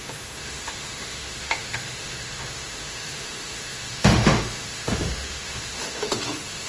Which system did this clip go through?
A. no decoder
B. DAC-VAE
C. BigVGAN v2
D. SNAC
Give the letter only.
B